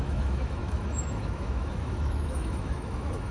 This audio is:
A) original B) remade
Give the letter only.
B